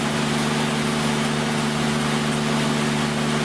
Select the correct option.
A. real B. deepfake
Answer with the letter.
A